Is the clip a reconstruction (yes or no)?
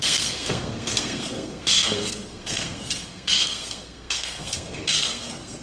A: yes